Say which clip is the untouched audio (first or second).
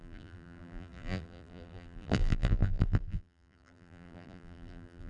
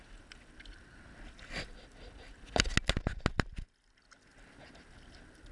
second